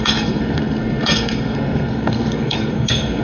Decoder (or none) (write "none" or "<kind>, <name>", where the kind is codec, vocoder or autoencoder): codec, SNAC